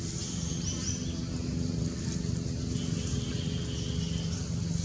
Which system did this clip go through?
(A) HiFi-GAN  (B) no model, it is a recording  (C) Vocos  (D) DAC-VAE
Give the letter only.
B